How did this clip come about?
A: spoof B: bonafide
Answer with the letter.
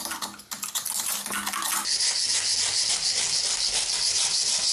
B